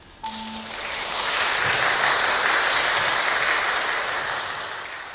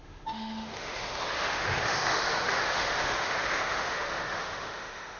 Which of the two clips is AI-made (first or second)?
second